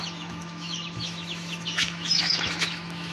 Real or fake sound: fake